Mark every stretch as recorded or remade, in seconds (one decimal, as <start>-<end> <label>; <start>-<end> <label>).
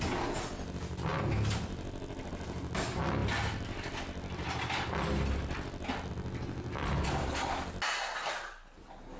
0.0-9.2 recorded